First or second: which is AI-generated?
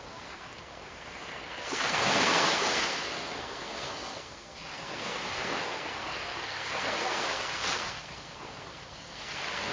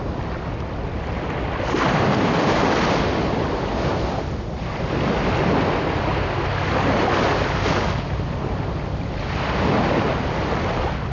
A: first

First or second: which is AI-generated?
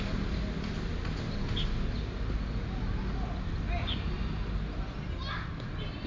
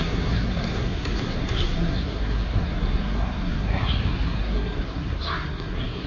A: second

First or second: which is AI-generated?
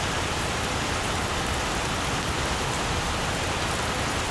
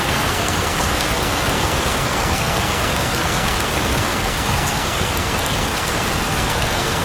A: second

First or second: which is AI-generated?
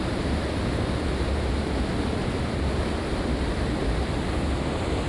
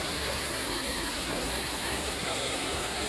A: second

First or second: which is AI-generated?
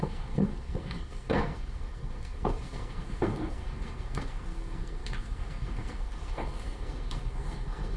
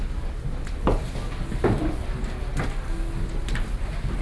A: first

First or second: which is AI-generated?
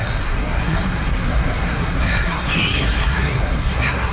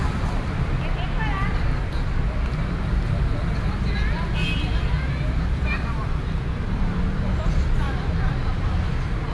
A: first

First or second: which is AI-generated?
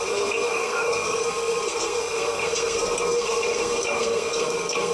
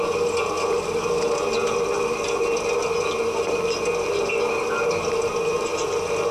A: first